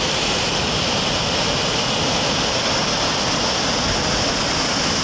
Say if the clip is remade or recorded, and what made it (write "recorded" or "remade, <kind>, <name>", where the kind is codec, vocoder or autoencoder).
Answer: recorded